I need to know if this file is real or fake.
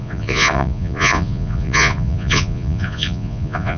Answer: fake